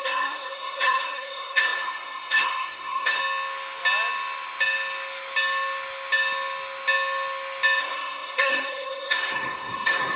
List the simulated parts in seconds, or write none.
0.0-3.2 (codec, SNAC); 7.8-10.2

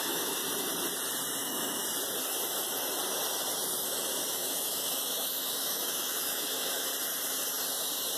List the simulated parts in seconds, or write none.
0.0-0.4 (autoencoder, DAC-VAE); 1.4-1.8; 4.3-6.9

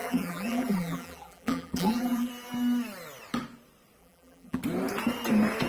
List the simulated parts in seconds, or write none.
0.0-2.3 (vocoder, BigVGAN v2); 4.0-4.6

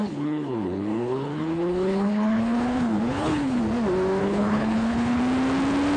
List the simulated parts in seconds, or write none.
0.0-3.6 (codec, HILCodec); 4.2-5.2

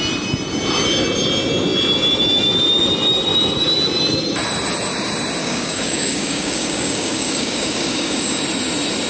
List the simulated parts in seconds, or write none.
5.4-8.4 (codec, DAC)

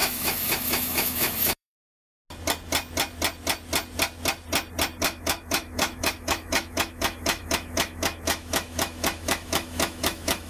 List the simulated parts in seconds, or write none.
0.0-2.0 (autoencoder, DAC-VAE); 5.0-10.5

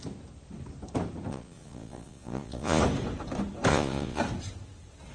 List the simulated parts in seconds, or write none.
1.3-2.8 (vocoder, Vocos); 3.7-4.2

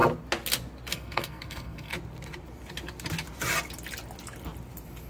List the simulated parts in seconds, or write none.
0.9-1.9 (codec, SNAC)